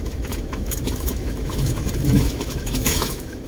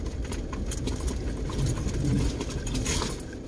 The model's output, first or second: first